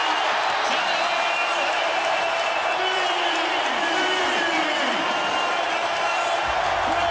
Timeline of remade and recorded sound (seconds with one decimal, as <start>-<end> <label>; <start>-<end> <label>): 0.0-0.6 remade; 0.6-1.4 recorded; 1.4-5.7 remade; 5.7-7.1 recorded